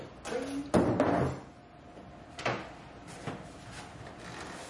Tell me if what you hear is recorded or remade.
recorded